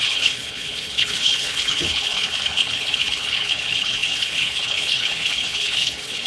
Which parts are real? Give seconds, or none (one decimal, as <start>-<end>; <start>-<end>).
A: none